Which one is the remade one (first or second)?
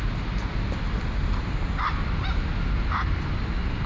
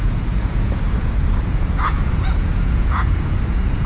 second